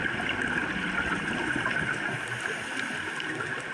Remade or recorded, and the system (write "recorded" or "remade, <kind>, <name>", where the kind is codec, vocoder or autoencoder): recorded